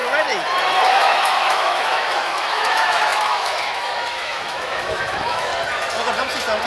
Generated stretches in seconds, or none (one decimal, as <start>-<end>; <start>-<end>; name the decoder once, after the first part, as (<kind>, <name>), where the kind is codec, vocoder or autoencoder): 0.9-5.5 (autoencoder, DAC-VAE)